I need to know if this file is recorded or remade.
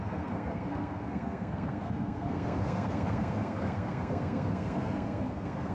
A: remade